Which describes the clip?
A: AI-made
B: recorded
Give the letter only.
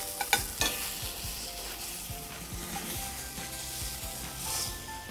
B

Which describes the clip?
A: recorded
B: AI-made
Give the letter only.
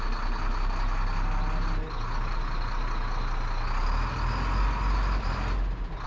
A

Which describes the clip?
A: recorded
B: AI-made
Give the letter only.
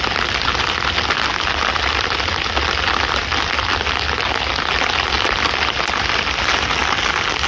A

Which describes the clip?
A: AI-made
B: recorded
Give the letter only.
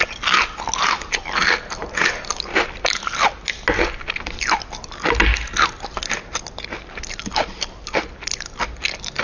B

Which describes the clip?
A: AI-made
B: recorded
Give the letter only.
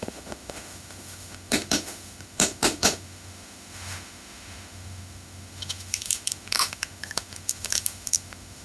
A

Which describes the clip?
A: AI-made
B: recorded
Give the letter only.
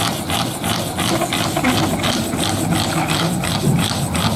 B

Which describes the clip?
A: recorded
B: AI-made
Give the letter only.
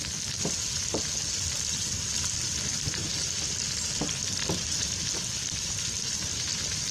A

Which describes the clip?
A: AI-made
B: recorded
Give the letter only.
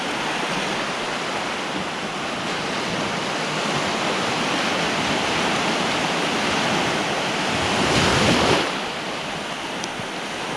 B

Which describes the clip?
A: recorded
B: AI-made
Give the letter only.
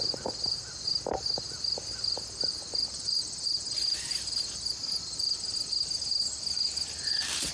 A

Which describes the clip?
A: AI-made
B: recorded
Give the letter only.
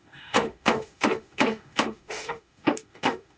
A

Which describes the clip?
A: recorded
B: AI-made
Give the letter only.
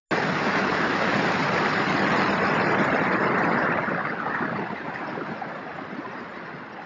A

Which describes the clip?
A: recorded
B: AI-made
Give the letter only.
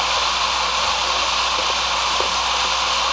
A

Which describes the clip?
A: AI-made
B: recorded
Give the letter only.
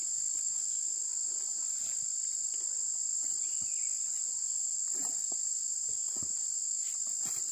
B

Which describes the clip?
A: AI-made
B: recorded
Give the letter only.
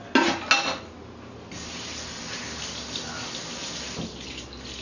B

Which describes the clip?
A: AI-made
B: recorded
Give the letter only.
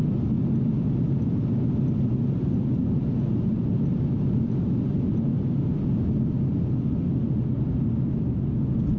B